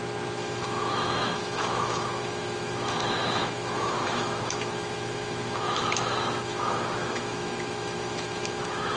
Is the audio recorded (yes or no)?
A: no